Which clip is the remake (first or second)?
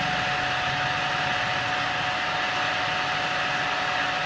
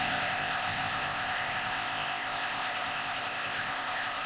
second